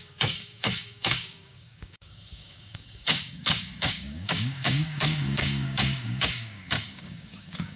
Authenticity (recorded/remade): remade